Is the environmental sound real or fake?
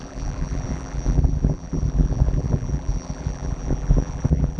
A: fake